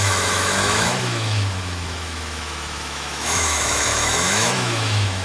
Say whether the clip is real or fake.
fake